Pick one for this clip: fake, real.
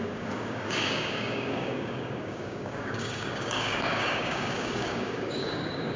fake